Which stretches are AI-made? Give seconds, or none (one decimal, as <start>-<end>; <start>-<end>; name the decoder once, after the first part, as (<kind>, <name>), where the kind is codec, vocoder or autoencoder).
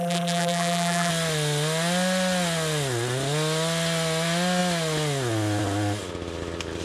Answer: 0.0-1.1 (vocoder, BigVGAN v2)